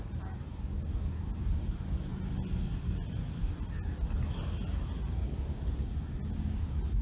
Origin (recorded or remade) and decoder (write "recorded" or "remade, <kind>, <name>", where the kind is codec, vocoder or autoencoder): recorded